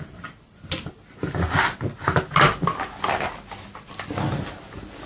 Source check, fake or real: real